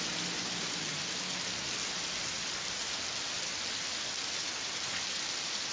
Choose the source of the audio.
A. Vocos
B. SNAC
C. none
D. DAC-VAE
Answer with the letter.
C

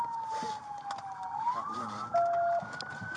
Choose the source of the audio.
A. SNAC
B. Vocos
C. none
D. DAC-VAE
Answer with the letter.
C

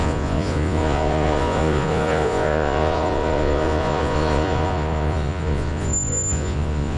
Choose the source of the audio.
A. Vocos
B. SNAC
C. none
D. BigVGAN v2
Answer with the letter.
A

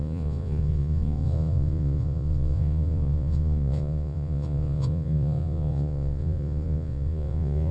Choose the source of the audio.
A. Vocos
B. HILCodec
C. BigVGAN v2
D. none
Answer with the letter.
A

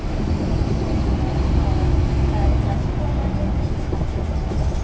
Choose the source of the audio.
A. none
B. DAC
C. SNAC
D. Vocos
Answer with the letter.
A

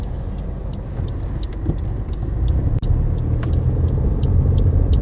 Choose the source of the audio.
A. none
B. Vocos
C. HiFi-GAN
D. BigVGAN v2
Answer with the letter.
A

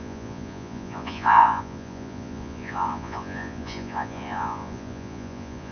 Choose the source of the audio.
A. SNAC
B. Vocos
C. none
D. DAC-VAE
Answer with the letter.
B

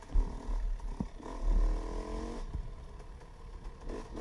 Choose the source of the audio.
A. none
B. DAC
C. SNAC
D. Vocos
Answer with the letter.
A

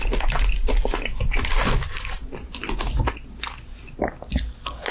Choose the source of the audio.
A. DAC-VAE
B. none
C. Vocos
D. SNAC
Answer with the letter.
B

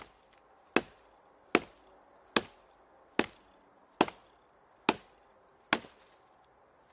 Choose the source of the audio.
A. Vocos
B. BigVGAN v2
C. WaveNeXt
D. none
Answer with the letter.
D